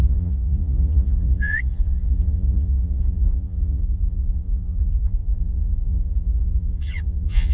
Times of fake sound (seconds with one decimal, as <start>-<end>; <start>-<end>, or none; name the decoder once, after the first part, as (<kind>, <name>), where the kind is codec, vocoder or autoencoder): 0.0-7.5 (vocoder, Vocos)